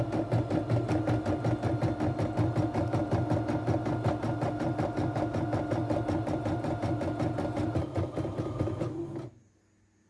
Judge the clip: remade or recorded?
recorded